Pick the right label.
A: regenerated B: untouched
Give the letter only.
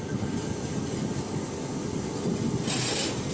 B